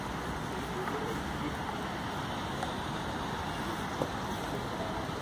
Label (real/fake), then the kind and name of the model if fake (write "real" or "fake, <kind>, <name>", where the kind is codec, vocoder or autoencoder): real